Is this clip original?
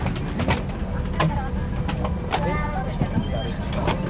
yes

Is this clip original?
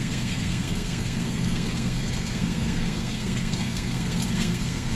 no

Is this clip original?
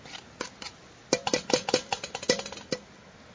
yes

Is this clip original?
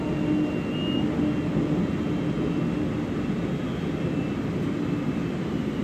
yes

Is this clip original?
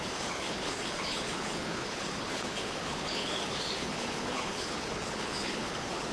no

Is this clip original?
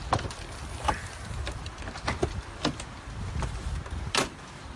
yes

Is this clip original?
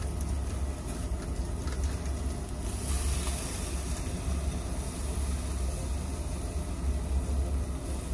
yes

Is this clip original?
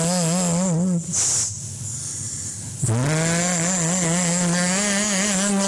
yes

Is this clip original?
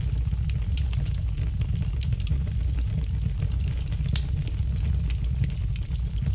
yes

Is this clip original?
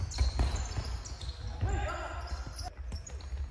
yes